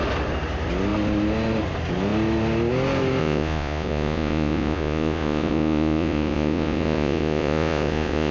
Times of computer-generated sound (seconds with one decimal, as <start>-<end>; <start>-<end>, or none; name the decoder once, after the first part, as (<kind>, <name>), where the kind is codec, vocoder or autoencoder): 3.2-8.3 (vocoder, Vocos)